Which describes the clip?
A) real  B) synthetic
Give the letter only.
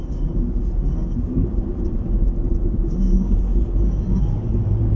A